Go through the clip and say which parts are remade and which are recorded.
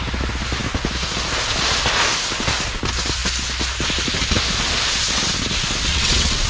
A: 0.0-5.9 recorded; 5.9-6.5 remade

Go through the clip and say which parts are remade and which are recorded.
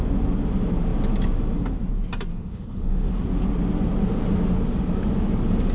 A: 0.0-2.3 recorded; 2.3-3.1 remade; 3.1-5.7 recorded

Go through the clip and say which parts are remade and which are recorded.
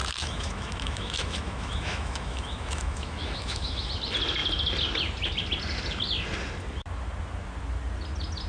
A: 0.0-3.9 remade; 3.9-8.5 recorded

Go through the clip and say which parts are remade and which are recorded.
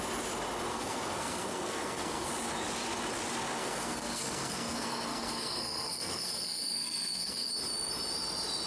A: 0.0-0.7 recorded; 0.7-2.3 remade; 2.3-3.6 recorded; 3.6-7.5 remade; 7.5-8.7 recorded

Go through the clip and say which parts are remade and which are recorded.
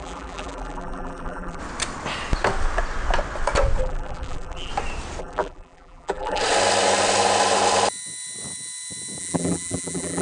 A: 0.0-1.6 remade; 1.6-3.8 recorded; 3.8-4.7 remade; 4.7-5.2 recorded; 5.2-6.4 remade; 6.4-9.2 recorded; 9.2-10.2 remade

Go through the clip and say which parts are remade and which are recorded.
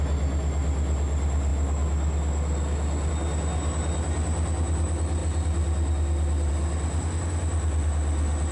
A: 0.0-8.5 recorded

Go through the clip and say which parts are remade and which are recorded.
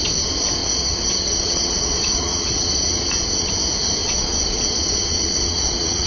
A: 0.0-0.6 recorded; 0.6-3.5 remade; 3.5-4.0 recorded; 4.0-6.1 remade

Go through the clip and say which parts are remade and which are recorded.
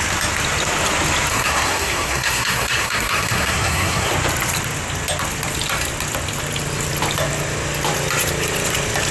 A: 0.0-1.3 recorded; 1.3-4.1 remade; 4.1-9.1 recorded